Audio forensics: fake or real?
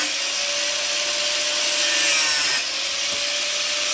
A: real